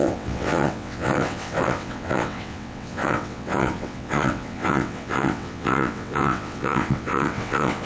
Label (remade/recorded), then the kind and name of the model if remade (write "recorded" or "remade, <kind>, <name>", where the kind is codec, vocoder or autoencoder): remade, vocoder, WaveNeXt